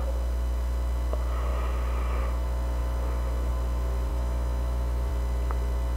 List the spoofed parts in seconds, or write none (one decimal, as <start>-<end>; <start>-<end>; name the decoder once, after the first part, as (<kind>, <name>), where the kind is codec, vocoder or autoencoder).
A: 4.1-5.1 (autoencoder, DAC-VAE)